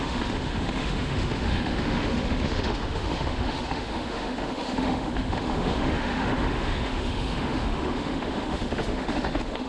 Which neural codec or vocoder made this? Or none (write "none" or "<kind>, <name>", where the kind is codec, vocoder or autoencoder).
autoencoder, DAC-VAE